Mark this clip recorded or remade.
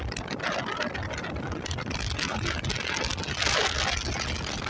recorded